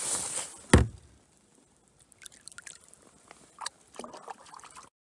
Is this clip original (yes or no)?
yes